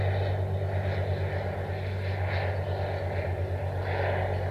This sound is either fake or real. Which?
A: real